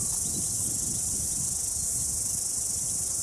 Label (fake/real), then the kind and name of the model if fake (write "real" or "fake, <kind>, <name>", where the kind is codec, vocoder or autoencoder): real